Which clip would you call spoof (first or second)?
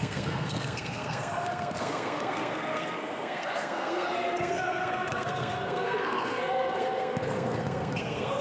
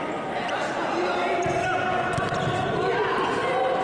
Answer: first